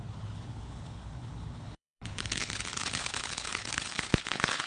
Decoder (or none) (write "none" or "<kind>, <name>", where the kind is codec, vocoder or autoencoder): codec, HILCodec